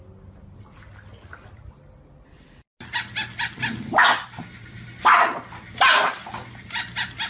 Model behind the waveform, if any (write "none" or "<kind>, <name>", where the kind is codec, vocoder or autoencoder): none